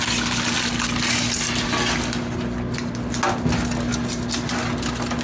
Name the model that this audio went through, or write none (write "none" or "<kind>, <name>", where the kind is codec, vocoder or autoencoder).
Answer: none